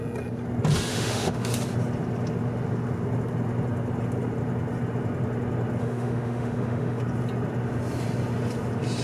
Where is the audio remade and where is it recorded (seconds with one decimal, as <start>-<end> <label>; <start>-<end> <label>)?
0.0-0.9 recorded; 0.9-1.5 remade; 1.5-5.8 recorded; 5.8-7.0 remade; 7.0-9.0 recorded